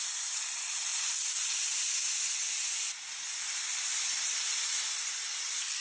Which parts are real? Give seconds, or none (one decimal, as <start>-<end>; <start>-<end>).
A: 0.0-5.8